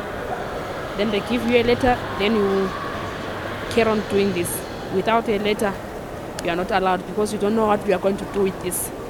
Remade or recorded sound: recorded